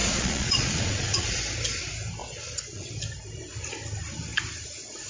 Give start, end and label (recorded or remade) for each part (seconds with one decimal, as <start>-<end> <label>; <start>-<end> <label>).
0.0-1.4 remade; 1.4-2.2 recorded; 2.2-2.9 remade; 2.9-5.1 recorded